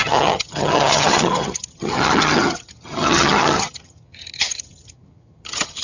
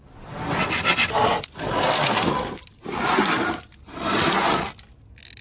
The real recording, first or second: second